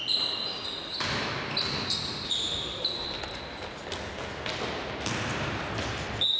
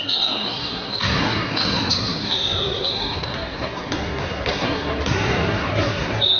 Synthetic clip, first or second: second